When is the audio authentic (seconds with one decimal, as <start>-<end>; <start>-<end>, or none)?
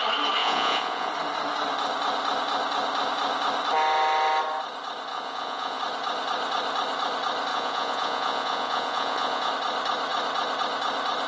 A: 0.0-0.4; 1.1-5.1; 5.8-7.5; 9.5-11.3